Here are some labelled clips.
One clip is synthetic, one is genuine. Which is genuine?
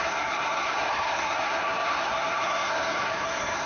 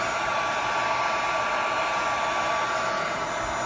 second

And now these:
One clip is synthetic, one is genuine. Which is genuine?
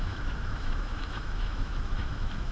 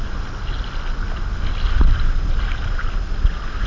second